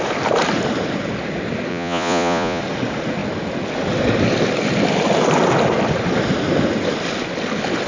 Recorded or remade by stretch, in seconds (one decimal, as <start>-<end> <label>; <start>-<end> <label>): 0.0-1.7 recorded; 1.7-2.6 remade; 2.6-7.9 recorded